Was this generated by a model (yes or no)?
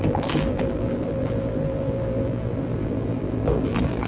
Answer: yes